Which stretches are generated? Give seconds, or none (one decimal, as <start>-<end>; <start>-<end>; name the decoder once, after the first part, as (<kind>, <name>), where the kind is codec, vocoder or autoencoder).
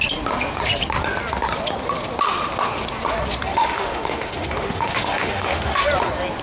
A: 3.5-5.9 (autoencoder, DAC-VAE)